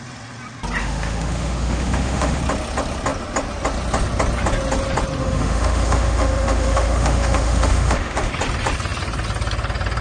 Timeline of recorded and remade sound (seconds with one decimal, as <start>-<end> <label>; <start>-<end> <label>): 0.0-0.8 recorded; 0.8-2.4 remade; 2.4-5.2 recorded; 5.2-8.3 remade; 8.3-10.0 recorded